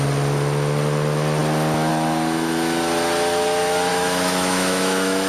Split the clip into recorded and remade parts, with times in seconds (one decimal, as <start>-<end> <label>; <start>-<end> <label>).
0.0-3.9 recorded; 3.9-5.3 remade